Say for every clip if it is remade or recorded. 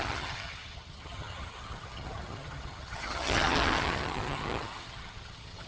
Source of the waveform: remade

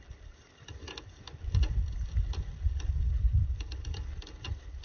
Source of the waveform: recorded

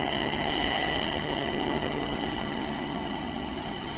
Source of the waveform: remade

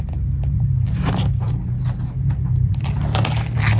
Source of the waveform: recorded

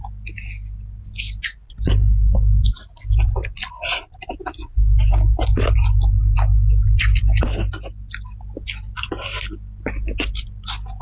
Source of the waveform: recorded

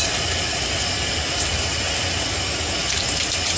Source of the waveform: recorded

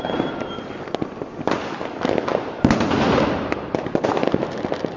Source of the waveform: recorded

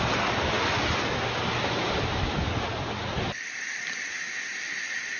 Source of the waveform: recorded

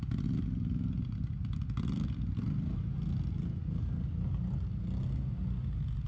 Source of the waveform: recorded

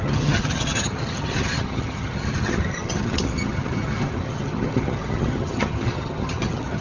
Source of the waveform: remade